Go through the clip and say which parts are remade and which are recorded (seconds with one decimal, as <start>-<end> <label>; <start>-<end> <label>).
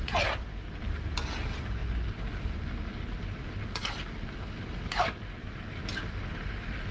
0.0-6.9 recorded